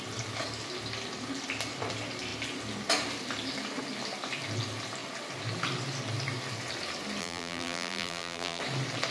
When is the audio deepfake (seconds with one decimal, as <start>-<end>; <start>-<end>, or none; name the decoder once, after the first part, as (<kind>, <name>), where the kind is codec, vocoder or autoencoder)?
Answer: 7.2-8.6 (vocoder, BigVGAN v2)